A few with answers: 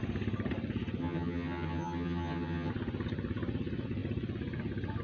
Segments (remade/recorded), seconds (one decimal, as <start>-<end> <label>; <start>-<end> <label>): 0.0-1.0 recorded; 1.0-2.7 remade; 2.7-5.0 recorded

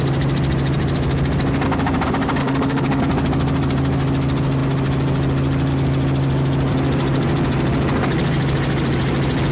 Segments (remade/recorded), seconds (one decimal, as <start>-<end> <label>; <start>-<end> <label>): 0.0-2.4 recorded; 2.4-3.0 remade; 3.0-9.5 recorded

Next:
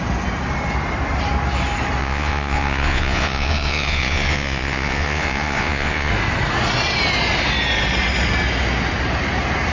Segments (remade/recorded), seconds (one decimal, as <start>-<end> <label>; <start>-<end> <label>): 0.0-2.0 recorded; 2.0-6.1 remade; 6.1-9.7 recorded

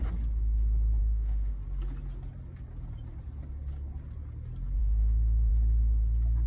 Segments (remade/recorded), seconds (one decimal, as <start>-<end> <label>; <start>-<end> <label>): 0.0-1.0 recorded; 1.0-1.6 remade; 1.6-4.8 recorded; 4.8-5.5 remade; 5.5-6.5 recorded